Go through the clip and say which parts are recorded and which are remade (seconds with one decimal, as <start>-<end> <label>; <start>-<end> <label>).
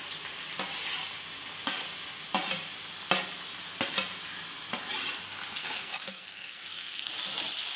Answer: 0.0-5.6 recorded; 5.6-7.1 remade; 7.1-7.8 recorded